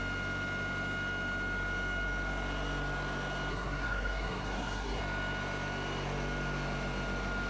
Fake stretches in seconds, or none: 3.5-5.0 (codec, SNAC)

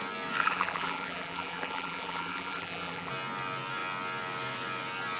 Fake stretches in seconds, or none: 0.4-3.1 (vocoder, BigVGAN v2)

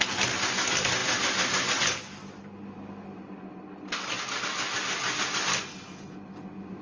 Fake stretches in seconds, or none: none

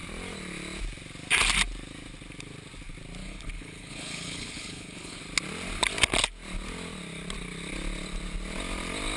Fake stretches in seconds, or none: 3.2-5.2 (codec, HILCodec)

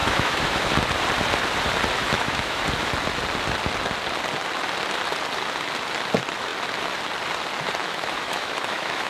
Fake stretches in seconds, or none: 0.0-0.7 (autoencoder, DAC-VAE); 2.0-2.6; 7.8-9.1

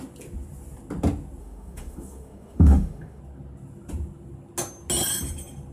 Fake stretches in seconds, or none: 1.4-3.2 (autoencoder, DAC-VAE)